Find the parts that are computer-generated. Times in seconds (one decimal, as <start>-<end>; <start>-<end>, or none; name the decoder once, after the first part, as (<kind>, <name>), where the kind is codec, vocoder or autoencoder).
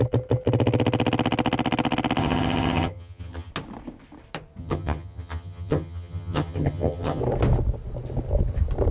2.2-3.5 (vocoder, HiFi-GAN); 4.6-7.2